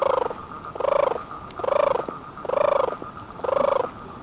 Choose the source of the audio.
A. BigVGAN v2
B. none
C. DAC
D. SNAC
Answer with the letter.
B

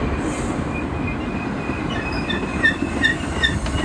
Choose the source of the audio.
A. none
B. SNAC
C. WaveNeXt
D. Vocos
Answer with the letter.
A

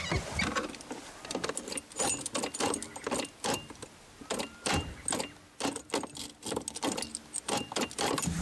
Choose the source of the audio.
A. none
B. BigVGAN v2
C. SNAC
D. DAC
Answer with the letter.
A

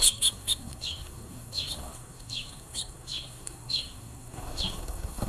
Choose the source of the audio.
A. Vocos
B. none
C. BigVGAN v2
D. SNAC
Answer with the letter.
D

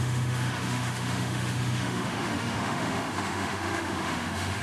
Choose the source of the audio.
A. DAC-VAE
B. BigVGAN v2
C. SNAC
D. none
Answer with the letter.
A